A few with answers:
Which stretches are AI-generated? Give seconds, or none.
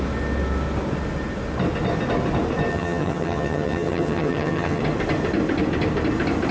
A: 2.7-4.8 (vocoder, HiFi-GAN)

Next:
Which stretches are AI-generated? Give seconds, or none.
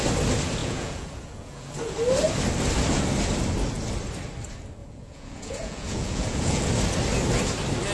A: 0.6-1.7 (vocoder, Vocos); 4.8-6.6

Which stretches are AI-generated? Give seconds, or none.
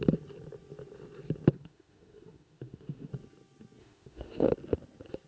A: 1.5-3.1 (autoencoder, DAC-VAE); 3.8-4.5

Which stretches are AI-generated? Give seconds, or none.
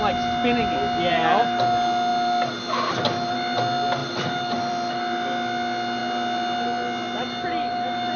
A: none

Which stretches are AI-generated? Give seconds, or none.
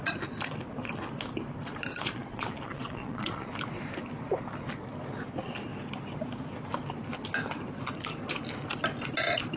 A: 1.9-3.5 (vocoder, Vocos)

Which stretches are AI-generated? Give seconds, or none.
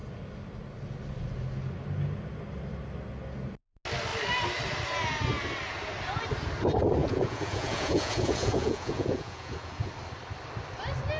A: 7.0-9.9 (vocoder, Vocos)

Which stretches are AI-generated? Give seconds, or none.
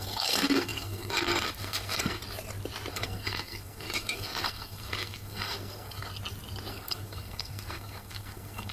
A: 0.0-2.2 (codec, SNAC); 2.9-6.1; 6.7-8.7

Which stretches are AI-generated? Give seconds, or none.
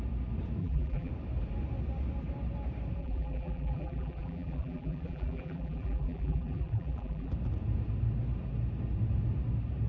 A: 0.6-1.1 (vocoder, BigVGAN v2); 3.0-7.3